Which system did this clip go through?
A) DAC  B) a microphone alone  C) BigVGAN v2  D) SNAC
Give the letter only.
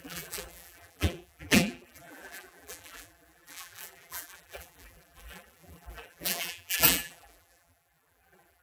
C